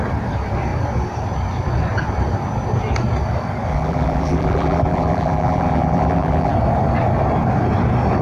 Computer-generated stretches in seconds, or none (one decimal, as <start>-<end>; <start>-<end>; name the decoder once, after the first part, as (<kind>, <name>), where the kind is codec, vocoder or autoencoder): 3.7-6.5 (vocoder, BigVGAN v2)